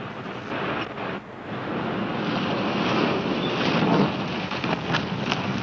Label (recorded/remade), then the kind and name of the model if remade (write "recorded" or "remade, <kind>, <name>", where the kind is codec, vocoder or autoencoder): recorded